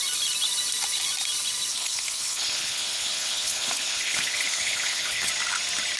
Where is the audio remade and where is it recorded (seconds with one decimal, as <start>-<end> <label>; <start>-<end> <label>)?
0.0-1.7 recorded; 1.7-5.3 remade; 5.3-6.0 recorded